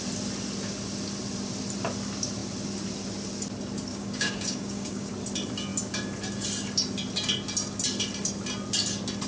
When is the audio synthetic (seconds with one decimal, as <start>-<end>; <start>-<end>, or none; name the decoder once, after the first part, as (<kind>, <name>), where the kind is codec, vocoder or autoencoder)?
3.9-5.1 (codec, DAC)